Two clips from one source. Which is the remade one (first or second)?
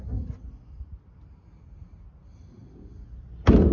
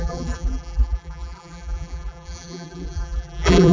second